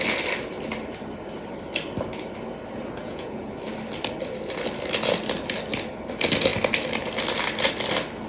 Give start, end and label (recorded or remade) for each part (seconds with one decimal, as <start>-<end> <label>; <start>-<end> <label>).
0.0-3.0 recorded; 3.0-3.5 remade; 3.5-8.3 recorded